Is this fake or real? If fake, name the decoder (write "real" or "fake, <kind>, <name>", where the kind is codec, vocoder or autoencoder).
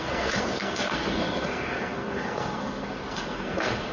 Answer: fake, codec, SNAC